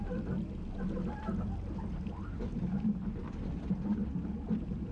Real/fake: real